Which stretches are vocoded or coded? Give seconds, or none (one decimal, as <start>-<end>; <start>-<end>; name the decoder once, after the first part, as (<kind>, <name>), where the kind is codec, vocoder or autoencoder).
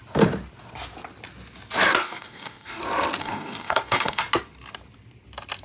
2.0-2.8 (codec, DAC); 3.2-4.2